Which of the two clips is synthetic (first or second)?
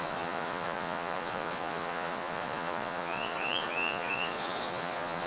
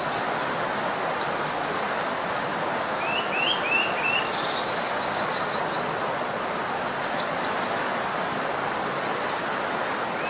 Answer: first